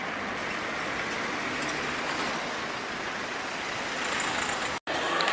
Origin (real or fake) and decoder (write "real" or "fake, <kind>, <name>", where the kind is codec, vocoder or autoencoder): real